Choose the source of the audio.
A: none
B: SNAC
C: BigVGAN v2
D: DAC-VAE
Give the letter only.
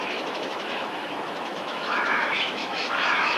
D